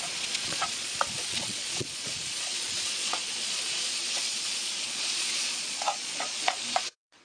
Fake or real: fake